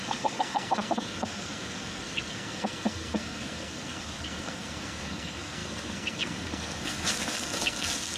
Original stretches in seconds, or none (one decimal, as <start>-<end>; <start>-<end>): none